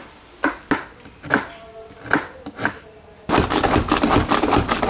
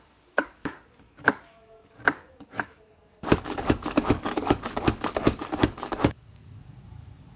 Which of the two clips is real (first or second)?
first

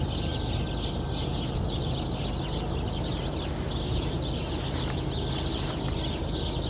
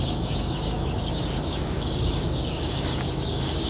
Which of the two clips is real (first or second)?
first